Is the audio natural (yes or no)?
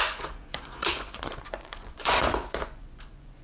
no